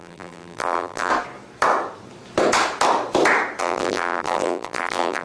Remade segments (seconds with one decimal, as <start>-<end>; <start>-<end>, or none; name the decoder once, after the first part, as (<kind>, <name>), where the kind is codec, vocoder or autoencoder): 0.0-1.1 (vocoder, BigVGAN v2); 3.6-5.2